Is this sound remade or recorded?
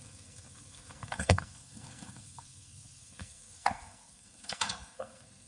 remade